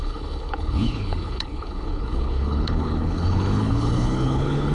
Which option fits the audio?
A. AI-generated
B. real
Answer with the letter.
A